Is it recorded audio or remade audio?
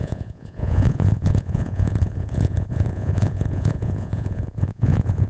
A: remade